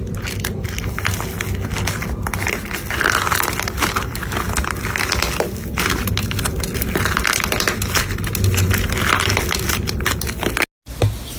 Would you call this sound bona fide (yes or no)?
yes